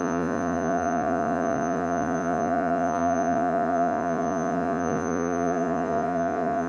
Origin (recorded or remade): remade